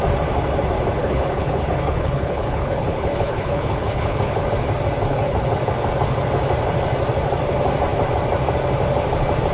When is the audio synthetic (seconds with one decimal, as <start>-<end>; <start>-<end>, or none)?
1.0-4.4; 5.1-5.6

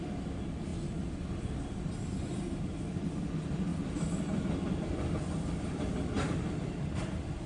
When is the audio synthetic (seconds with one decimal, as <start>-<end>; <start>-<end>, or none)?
0.0-0.7; 1.4-7.5

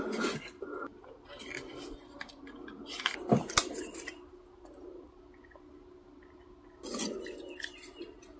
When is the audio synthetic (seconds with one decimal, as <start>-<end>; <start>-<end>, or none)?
none

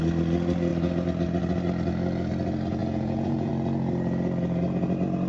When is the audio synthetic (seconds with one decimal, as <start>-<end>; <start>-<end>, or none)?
2.8-3.5

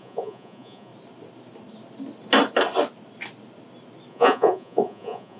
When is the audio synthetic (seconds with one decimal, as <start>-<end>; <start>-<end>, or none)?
0.0-0.9; 4.1-5.4

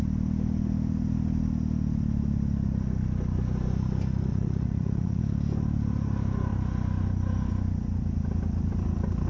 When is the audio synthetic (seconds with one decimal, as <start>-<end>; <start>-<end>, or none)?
4.3-5.2